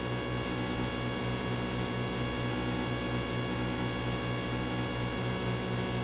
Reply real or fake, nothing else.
real